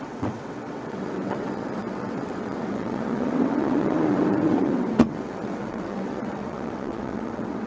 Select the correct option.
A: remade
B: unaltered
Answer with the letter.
A